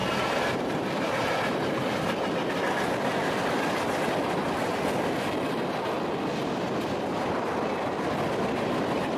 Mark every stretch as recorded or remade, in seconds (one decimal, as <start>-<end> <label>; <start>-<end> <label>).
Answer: 0.0-2.0 remade; 2.0-9.2 recorded